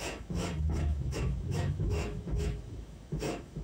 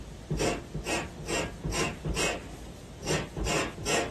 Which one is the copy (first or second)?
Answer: first